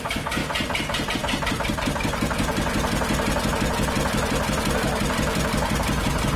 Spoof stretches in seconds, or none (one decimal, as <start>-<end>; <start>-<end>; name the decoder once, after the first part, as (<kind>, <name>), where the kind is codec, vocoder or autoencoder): 0.0-0.4 (vocoder, BigVGAN v2); 1.1-2.5; 3.5-6.4